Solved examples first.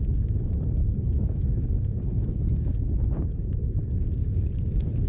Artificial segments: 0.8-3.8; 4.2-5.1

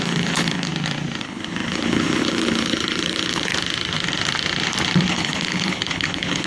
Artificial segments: 0.0-0.7; 1.2-3.5; 5.1-6.5

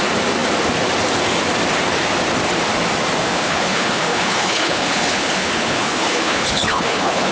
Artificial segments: 3.2-7.3

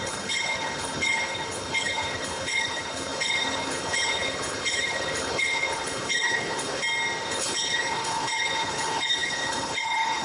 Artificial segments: 0.0-6.8; 7.3-10.2

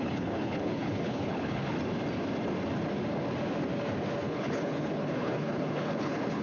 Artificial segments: 0.0-1.6; 4.2-6.4

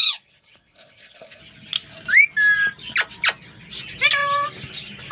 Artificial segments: 0.0-1.4